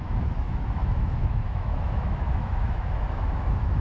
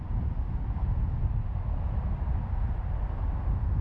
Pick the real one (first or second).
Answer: second